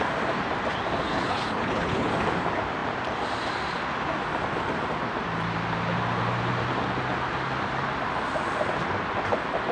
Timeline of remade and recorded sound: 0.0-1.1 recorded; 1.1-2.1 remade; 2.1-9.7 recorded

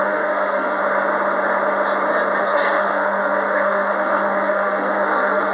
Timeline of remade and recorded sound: 0.0-0.8 remade; 0.8-2.4 recorded; 2.4-5.5 remade